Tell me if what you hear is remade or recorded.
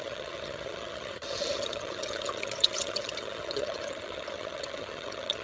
remade